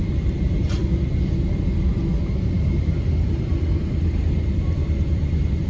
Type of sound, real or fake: fake